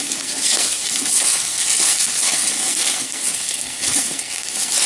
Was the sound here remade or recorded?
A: remade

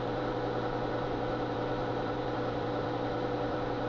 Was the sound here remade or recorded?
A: remade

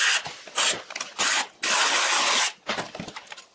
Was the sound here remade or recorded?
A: recorded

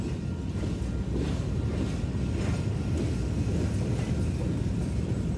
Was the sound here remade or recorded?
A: recorded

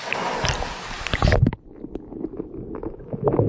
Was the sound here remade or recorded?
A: recorded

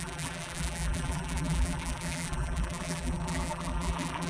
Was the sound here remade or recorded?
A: remade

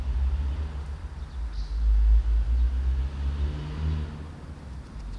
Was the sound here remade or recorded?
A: recorded